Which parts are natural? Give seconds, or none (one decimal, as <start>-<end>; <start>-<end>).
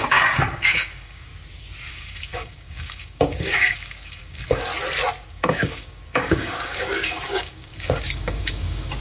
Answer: 1.3-1.9; 4.7-5.3